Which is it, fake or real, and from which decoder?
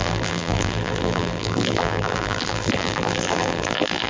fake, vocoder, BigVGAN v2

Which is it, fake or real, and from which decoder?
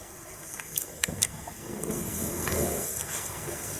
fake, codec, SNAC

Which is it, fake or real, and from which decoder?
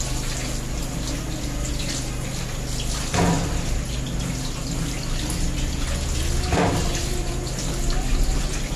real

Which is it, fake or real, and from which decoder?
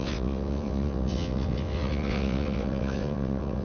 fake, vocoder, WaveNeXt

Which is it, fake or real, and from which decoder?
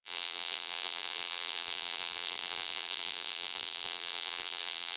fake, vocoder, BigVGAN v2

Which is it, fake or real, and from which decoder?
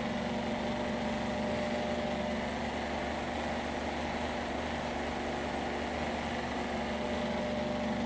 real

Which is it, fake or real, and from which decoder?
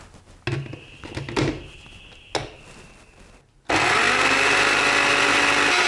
real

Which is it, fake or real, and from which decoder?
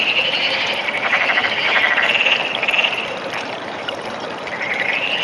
fake, vocoder, BigVGAN v2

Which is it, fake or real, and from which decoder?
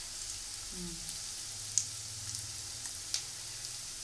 real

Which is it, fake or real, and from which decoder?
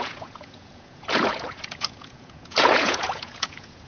fake, vocoder, Vocos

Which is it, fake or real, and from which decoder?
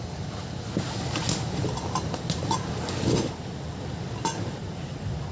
real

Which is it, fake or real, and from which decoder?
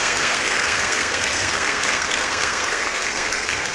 fake, codec, SNAC